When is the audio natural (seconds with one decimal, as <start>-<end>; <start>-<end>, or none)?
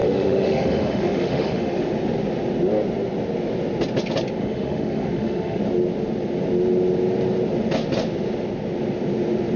1.8-4.4; 5.6-9.6